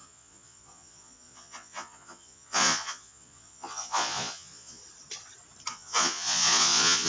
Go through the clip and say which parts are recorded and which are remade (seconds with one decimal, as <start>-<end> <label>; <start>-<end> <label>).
0.0-4.8 remade; 4.8-5.7 recorded; 5.7-7.1 remade